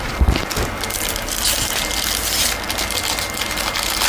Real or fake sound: real